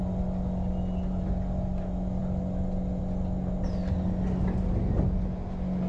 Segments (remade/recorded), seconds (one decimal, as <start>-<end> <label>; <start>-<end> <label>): 0.0-5.9 recorded